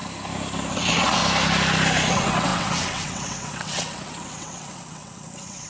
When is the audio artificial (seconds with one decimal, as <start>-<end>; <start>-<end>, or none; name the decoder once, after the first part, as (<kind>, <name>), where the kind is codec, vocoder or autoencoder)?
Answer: 0.7-1.2 (vocoder, WaveNeXt); 2.1-5.7